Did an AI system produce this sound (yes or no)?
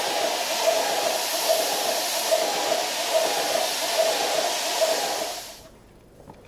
no